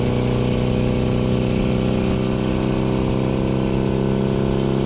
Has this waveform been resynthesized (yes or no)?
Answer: no